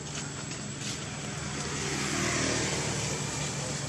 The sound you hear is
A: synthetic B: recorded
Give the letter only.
B